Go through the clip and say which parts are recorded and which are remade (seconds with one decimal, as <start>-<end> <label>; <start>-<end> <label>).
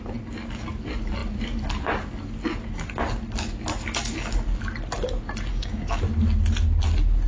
0.0-5.5 recorded; 5.5-6.0 remade; 6.0-7.3 recorded